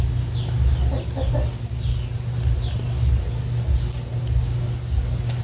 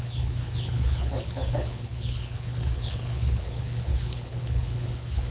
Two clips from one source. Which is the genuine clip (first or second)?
first